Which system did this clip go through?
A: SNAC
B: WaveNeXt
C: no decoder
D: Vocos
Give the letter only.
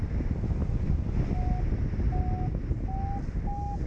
C